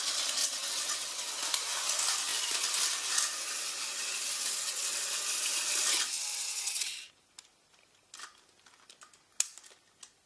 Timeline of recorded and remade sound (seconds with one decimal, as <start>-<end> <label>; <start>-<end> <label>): 0.0-0.4 recorded; 0.4-1.2 remade; 1.2-6.3 recorded; 6.3-7.1 remade; 7.1-10.3 recorded